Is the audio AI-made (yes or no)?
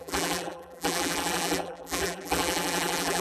yes